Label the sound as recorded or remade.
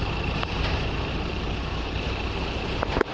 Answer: remade